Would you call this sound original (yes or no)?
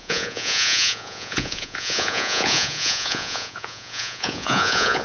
no